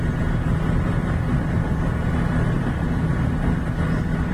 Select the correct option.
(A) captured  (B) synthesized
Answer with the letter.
A